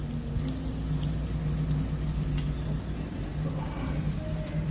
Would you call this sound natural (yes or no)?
yes